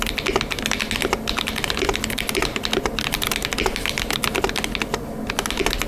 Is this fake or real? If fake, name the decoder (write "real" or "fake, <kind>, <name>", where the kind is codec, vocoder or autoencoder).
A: real